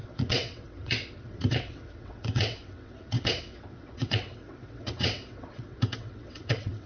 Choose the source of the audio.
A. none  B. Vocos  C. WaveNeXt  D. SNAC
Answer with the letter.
C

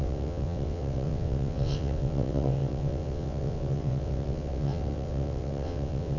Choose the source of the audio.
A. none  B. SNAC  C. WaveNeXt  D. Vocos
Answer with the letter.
C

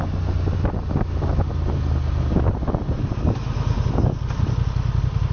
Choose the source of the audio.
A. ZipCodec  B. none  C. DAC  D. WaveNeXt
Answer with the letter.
B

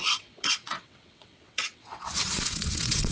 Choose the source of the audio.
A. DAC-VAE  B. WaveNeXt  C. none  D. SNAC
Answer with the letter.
B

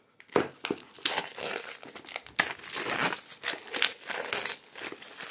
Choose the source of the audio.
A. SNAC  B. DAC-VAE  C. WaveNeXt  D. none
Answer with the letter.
D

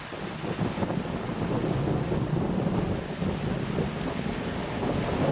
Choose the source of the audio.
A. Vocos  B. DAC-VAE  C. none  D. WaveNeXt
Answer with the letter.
C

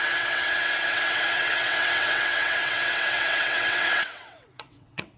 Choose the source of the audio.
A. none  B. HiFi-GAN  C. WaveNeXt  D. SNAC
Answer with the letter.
C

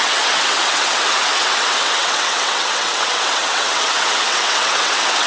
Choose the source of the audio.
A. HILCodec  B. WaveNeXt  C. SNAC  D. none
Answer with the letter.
B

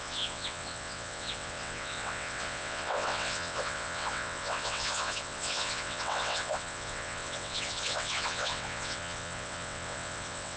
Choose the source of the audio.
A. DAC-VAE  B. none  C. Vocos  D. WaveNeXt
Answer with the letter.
D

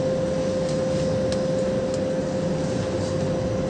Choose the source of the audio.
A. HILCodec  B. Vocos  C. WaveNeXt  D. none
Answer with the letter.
D